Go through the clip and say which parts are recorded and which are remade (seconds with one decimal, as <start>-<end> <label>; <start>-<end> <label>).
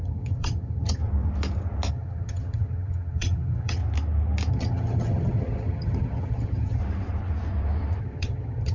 0.0-1.0 remade; 1.0-1.9 recorded; 1.9-3.8 remade; 3.8-4.5 recorded; 4.5-6.8 remade; 6.8-8.0 recorded; 8.0-8.7 remade